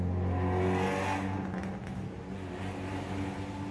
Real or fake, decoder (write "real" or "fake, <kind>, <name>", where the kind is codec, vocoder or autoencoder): real